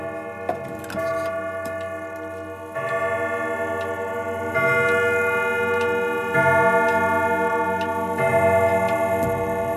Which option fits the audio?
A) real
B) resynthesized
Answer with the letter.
A